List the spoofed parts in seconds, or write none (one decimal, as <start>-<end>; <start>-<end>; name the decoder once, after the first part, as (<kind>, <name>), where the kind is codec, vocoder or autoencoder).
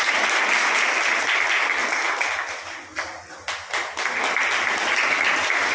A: none